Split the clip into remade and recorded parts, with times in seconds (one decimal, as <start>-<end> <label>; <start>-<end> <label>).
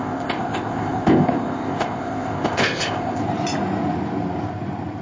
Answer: 0.0-3.2 remade; 3.2-5.0 recorded